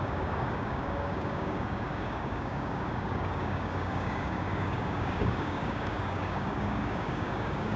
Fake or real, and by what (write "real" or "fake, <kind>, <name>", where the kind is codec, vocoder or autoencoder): fake, codec, DAC